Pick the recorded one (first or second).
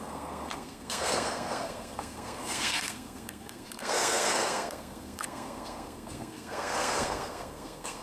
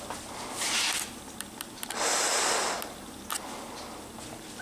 second